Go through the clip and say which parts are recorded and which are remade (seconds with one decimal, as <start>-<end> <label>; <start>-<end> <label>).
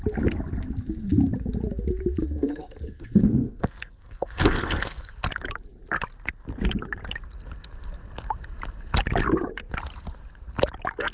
0.0-2.2 recorded; 2.2-5.1 remade; 5.1-11.1 recorded